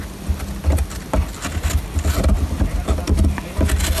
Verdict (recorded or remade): recorded